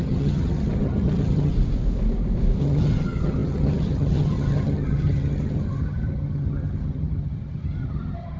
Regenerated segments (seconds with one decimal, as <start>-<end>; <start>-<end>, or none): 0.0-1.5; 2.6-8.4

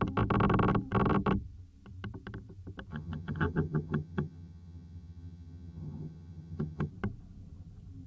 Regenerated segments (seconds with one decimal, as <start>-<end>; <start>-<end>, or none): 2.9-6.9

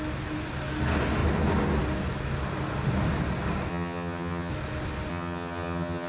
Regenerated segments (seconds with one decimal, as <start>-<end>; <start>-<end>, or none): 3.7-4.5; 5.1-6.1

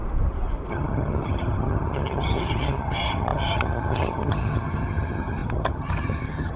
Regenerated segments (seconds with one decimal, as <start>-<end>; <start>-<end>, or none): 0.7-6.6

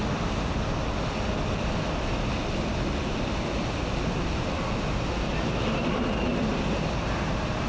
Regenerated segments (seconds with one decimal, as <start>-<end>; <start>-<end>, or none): none

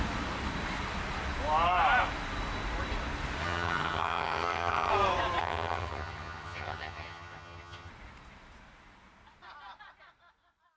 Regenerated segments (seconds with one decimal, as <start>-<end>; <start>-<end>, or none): 3.4-4.9; 5.4-7.9

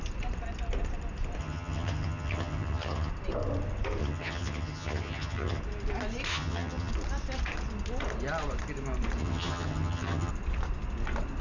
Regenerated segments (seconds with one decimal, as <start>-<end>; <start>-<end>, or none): 1.4-3.1; 4.0-5.6; 6.3-6.9; 9.2-10.3